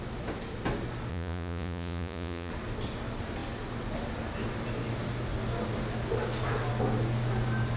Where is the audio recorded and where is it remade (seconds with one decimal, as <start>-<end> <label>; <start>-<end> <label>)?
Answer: 0.0-1.1 recorded; 1.1-2.5 remade; 2.5-7.8 recorded